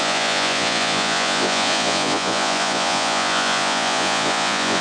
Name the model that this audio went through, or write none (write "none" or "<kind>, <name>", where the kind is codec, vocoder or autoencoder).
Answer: vocoder, Vocos